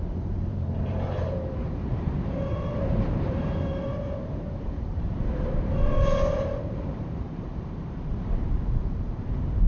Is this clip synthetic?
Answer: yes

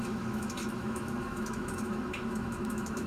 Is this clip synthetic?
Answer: yes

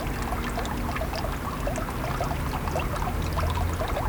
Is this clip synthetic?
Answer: no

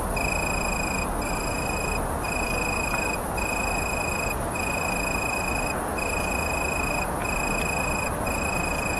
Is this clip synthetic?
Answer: yes